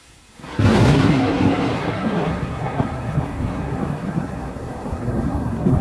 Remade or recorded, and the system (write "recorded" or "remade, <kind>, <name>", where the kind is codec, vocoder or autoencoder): remade, codec, SNAC